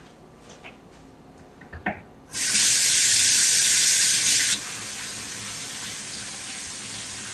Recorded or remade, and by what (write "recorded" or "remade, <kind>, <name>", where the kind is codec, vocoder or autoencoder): recorded